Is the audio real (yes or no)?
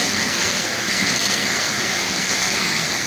no